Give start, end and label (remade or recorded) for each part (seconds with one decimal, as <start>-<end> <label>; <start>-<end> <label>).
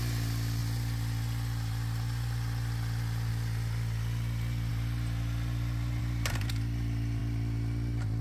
0.0-8.2 recorded